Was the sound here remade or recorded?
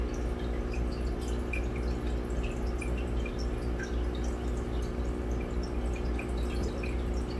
recorded